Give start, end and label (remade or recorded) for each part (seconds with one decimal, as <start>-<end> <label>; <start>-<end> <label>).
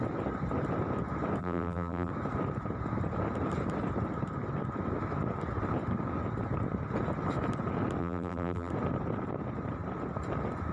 0.0-1.4 recorded; 1.4-2.1 remade; 2.1-8.0 recorded; 8.0-8.7 remade; 8.7-10.7 recorded